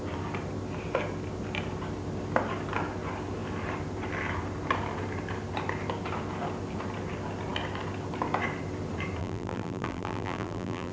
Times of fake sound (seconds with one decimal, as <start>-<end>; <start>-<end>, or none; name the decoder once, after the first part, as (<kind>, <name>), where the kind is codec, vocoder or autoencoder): 9.2-10.9 (vocoder, BigVGAN v2)